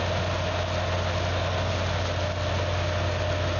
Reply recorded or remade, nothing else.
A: recorded